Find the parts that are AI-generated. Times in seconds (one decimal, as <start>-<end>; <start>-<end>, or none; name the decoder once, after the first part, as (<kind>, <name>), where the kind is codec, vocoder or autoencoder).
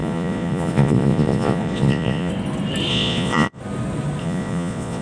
0.0-2.3 (vocoder, Vocos); 2.9-3.6; 4.2-5.0